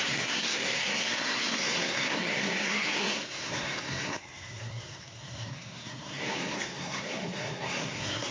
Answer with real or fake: fake